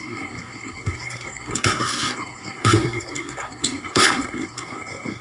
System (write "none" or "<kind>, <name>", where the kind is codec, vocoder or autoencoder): codec, SNAC